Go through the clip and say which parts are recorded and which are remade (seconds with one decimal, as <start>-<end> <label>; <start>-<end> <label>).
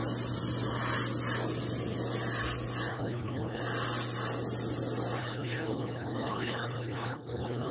0.0-2.9 recorded; 2.9-3.6 remade; 3.6-5.2 recorded; 5.2-7.7 remade